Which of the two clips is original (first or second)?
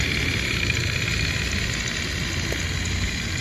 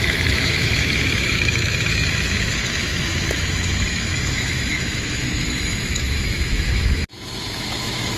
first